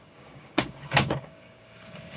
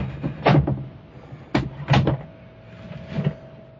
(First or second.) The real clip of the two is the second